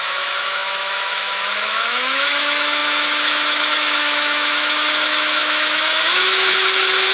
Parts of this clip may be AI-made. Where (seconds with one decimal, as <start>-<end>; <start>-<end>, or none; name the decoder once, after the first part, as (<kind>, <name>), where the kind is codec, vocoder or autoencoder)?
0.0-7.1 (autoencoder, DAC-VAE)